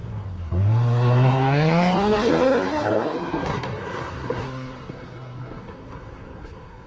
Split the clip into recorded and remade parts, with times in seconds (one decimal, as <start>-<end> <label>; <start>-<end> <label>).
0.0-6.9 remade